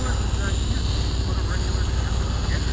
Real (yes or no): yes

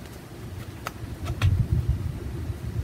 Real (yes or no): yes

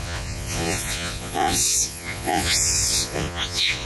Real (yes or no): no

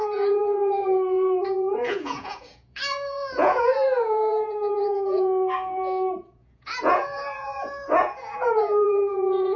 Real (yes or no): no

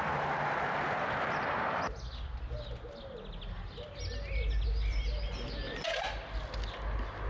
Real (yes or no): yes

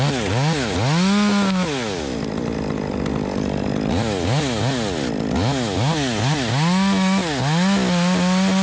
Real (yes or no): yes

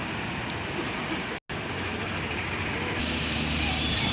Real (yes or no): yes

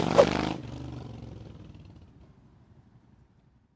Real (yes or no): yes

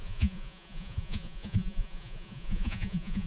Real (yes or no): no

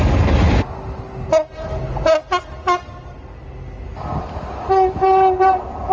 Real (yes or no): yes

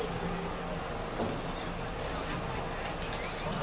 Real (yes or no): yes